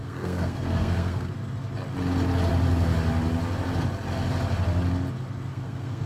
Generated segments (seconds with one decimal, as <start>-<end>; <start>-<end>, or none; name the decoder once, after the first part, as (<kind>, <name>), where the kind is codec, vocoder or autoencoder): 0.0-1.3 (codec, SNAC); 5.5-6.1